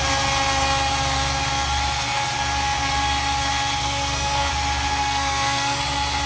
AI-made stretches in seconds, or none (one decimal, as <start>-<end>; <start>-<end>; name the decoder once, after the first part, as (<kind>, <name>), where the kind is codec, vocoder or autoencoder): 3.8-4.5 (codec, SNAC); 5.0-5.8